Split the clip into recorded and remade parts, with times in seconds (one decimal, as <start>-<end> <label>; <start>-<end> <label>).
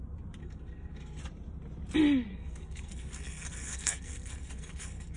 0.0-0.4 recorded; 0.4-1.2 remade; 1.2-2.3 recorded; 2.3-5.2 remade